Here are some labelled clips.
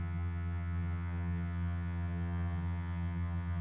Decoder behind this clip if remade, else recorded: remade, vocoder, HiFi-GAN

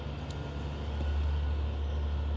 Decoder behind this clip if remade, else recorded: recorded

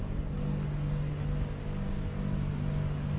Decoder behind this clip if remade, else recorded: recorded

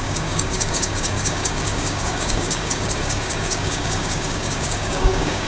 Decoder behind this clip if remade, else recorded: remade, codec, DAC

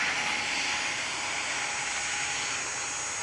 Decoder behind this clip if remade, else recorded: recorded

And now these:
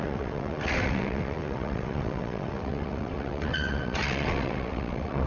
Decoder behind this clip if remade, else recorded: remade, vocoder, WaveNeXt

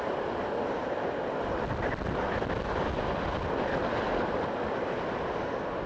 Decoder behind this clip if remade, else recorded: recorded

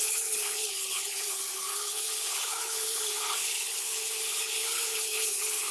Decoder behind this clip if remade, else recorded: remade, codec, HILCodec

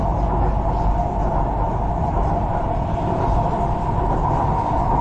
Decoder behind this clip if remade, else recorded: recorded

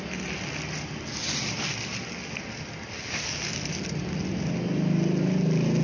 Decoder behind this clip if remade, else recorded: recorded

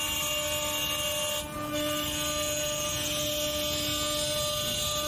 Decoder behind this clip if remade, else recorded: recorded